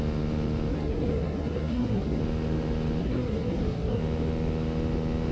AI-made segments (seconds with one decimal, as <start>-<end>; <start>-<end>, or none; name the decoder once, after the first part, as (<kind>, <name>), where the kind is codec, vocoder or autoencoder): 0.7-2.2 (codec, SNAC); 3.0-4.0